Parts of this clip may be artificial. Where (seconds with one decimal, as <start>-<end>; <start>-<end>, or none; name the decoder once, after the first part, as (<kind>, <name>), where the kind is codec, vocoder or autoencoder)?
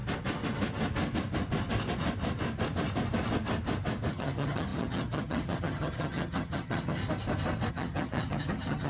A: 4.1-7.0 (vocoder, HiFi-GAN); 7.7-8.9